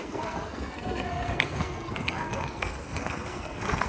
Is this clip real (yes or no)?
no